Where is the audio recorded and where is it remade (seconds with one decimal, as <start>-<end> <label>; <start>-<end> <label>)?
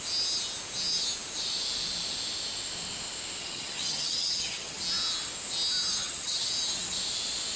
0.0-3.4 recorded; 3.4-4.8 remade; 4.8-6.0 recorded; 6.0-6.5 remade; 6.5-7.6 recorded